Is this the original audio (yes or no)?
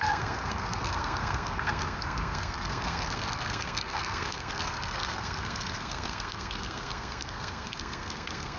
no